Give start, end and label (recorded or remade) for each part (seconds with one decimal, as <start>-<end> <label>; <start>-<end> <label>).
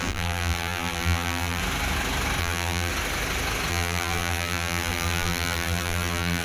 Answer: 0.0-1.6 remade; 1.6-2.4 recorded; 2.4-2.9 remade; 2.9-3.7 recorded; 3.7-6.4 remade